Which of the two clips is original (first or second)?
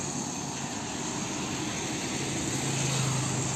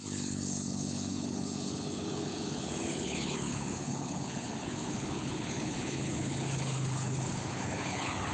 first